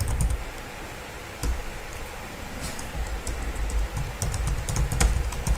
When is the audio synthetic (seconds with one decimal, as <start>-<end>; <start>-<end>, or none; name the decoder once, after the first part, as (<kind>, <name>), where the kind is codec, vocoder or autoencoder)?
none